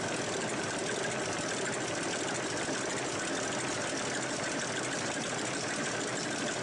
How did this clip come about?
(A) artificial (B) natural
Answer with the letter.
B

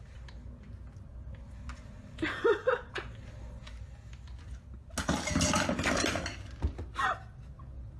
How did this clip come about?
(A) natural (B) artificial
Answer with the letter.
A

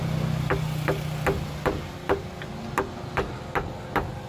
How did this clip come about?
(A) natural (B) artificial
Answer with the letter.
A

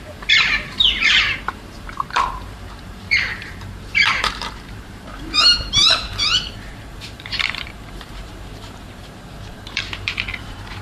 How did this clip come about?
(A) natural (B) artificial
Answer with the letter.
B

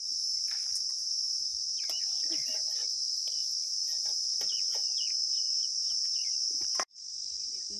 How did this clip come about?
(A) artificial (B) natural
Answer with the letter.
A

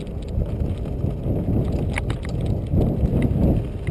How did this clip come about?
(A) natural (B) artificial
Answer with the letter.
A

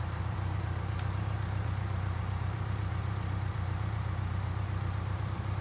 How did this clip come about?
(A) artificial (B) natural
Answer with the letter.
A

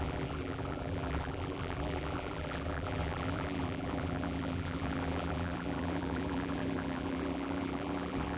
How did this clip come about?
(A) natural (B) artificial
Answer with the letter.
B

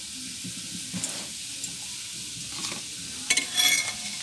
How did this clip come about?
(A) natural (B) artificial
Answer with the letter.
A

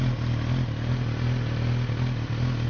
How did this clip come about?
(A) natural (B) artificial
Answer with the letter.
A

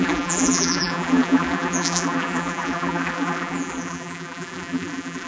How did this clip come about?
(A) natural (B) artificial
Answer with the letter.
B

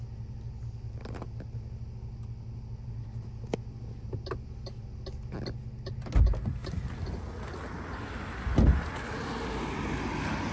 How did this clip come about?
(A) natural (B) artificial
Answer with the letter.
A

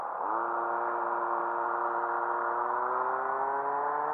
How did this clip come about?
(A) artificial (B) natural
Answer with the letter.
B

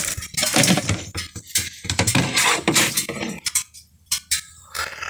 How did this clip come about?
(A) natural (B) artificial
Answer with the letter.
B